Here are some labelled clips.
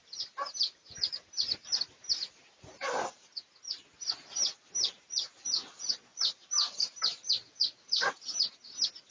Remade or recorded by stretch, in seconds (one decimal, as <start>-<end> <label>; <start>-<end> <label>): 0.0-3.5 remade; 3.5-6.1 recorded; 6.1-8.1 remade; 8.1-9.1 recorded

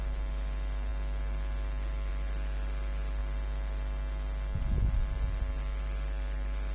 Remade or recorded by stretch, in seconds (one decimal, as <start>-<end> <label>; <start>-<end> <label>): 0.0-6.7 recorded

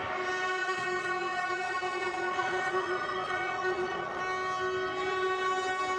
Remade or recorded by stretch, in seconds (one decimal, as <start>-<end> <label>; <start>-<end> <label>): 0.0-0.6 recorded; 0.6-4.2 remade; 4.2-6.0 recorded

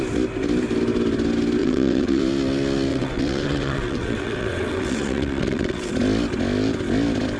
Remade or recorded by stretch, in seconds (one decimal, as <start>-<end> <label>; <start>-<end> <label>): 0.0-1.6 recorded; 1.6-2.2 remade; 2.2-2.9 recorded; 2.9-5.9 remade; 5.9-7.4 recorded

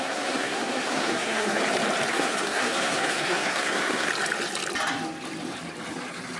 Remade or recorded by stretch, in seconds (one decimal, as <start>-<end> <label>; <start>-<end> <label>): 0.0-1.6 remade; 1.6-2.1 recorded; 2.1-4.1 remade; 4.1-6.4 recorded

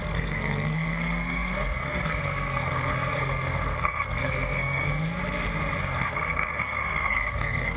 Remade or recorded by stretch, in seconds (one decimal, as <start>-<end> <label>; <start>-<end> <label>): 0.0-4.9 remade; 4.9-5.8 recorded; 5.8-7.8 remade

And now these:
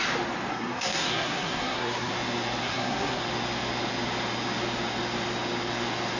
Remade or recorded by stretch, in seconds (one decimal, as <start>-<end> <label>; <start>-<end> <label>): 0.0-0.5 recorded; 0.5-2.1 remade; 2.1-2.6 recorded; 2.6-3.2 remade; 3.2-6.2 recorded